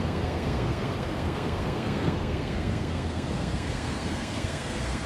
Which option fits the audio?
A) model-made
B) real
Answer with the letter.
A